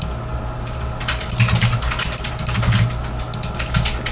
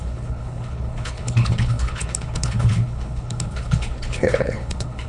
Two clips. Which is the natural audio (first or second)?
first